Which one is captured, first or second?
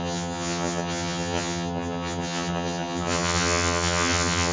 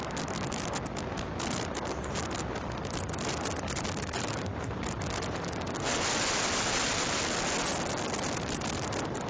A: second